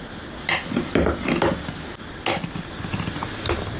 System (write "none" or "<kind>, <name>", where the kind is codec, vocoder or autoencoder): none